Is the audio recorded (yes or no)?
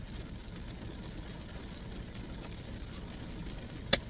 yes